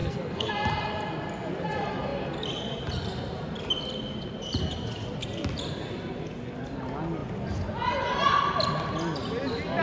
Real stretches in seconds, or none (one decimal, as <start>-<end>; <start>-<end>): 0.5-9.8